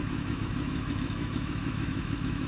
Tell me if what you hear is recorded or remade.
remade